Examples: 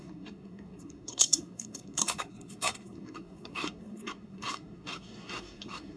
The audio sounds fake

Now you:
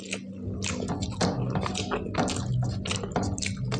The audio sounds real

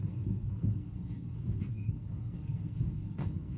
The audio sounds fake